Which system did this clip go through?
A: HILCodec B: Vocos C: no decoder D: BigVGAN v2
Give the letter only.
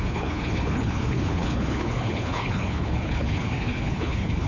A